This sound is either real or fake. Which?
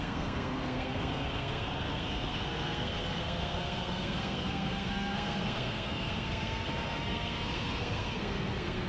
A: fake